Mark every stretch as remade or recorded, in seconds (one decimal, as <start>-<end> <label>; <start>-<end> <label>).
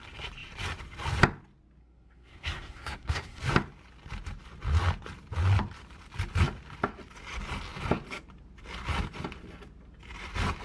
0.0-1.8 recorded; 1.8-3.4 remade; 3.4-10.6 recorded